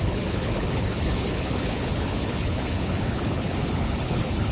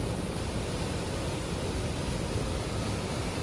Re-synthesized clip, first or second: first